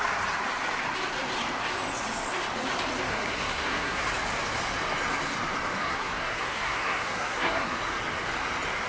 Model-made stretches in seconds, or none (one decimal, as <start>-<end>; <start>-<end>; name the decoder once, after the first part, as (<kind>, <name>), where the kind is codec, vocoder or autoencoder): 3.1-4.0 (codec, SNAC); 5.8-7.8